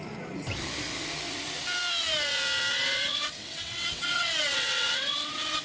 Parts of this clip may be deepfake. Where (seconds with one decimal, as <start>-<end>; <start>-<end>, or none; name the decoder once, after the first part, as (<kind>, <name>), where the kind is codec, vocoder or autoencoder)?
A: 2.7-5.6 (vocoder, WaveNeXt)